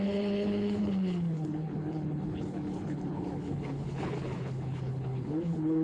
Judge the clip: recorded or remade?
remade